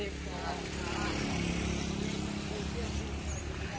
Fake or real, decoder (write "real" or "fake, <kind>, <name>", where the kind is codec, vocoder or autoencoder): real